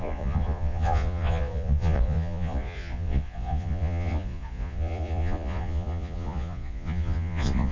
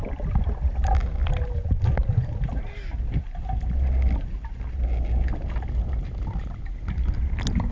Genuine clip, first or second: second